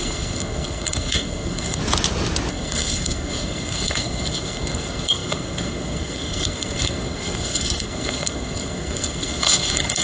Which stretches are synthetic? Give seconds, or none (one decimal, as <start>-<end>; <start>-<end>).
0.0-1.8; 2.5-10.0